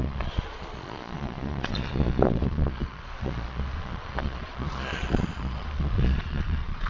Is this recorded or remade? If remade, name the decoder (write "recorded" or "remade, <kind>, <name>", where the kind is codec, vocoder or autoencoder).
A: remade, vocoder, Vocos